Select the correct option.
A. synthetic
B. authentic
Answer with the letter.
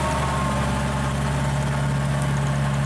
B